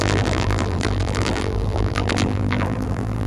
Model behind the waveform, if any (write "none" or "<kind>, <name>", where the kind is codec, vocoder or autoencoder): vocoder, BigVGAN v2